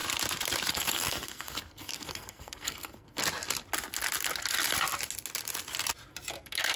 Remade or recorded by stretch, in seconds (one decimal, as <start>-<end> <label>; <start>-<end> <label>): 0.0-0.7 recorded; 0.7-3.2 remade; 3.2-6.3 recorded; 6.3-6.8 remade